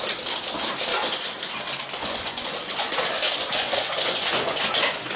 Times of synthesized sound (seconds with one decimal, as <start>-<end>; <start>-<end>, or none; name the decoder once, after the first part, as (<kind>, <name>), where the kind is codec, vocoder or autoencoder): 0.9-1.5 (vocoder, Vocos); 2.0-5.2